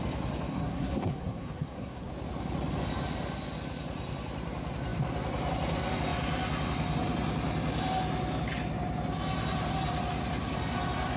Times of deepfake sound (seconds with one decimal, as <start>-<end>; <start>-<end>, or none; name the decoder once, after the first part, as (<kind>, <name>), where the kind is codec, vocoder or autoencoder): 0.5-2.1 (codec, SNAC)